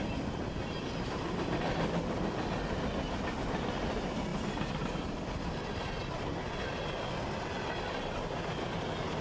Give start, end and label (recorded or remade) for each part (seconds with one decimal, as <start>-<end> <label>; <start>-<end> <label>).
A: 0.0-9.2 recorded